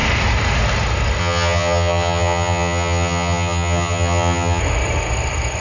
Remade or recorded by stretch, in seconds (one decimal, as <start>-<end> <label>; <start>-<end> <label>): 0.0-1.2 recorded; 1.2-4.6 remade; 4.6-5.6 recorded